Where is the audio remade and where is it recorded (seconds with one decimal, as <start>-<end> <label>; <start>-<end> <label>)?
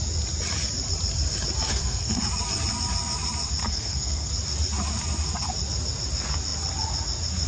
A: 0.0-1.7 recorded; 1.7-2.2 remade; 2.2-3.6 recorded; 3.6-4.3 remade; 4.3-7.5 recorded